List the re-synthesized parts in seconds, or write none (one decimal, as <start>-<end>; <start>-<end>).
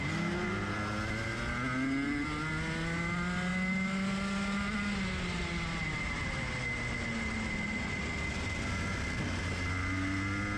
none